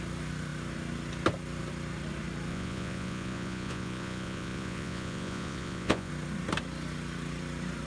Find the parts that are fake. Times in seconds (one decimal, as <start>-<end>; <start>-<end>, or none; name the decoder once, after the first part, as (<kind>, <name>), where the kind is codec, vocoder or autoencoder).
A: 2.5-6.1 (vocoder, Vocos)